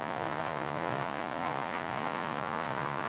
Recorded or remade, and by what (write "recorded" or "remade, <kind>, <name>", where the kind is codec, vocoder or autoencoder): remade, vocoder, Vocos